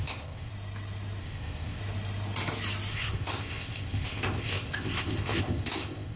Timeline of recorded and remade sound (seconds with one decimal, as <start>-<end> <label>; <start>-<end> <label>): 0.0-0.5 remade; 0.5-1.2 recorded; 1.2-1.8 remade; 1.8-2.9 recorded; 2.9-6.2 remade

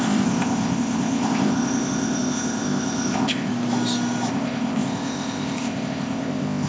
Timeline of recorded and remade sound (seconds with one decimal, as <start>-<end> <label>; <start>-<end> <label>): 0.0-3.5 remade; 3.5-4.3 recorded; 4.3-6.7 remade